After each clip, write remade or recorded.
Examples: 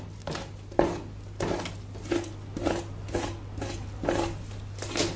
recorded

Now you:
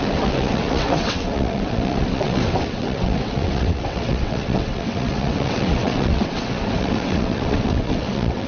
remade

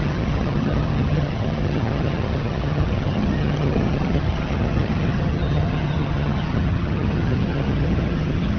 remade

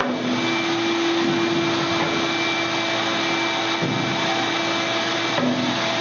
recorded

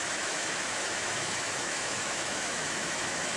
remade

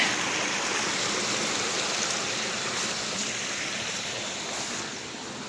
recorded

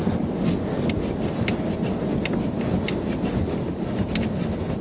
recorded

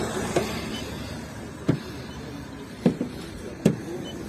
remade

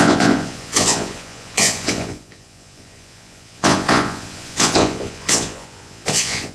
remade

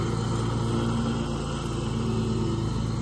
recorded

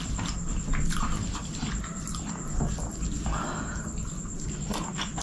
recorded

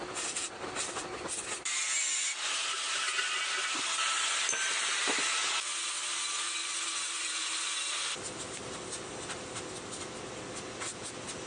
recorded